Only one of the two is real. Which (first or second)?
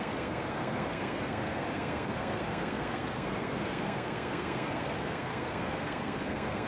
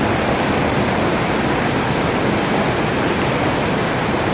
second